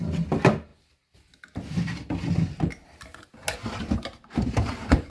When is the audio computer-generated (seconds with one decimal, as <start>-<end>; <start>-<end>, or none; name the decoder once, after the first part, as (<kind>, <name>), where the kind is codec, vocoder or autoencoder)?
none